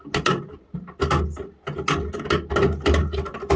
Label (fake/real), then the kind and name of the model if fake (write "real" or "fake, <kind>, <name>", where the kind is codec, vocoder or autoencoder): real